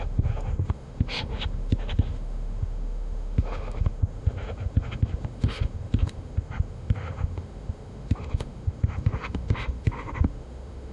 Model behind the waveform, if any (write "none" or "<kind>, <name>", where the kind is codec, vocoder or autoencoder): autoencoder, DAC-VAE